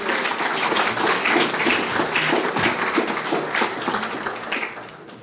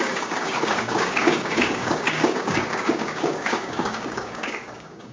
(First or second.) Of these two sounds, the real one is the first